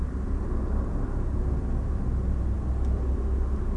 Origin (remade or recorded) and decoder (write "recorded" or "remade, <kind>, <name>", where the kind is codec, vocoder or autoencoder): recorded